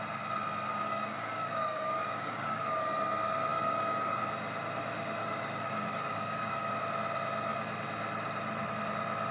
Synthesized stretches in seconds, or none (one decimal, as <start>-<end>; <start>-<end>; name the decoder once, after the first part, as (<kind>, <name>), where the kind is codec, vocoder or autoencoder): 0.7-2.8 (codec, DAC); 3.5-4.2; 5.2-6.7